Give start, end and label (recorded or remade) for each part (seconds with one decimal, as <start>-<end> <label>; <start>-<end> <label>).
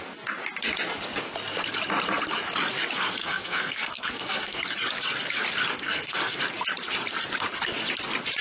0.0-3.2 recorded; 3.2-4.6 remade; 4.6-5.7 recorded; 5.7-6.4 remade; 6.4-8.4 recorded